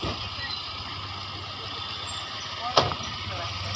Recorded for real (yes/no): yes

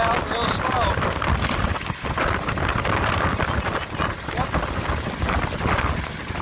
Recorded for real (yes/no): yes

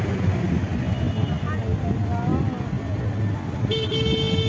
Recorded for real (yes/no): yes